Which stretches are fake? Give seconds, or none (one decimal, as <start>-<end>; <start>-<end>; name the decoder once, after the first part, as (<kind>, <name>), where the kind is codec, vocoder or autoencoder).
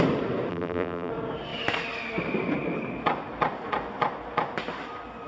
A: 0.5-1.1 (vocoder, BigVGAN v2)